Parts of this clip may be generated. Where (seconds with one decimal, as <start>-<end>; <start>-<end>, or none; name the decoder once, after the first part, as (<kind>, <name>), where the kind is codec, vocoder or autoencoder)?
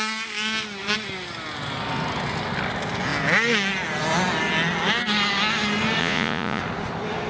6.0-6.6 (vocoder, Vocos)